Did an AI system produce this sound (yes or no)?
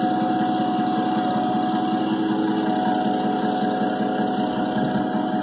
no